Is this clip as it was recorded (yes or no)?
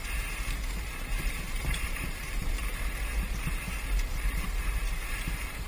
no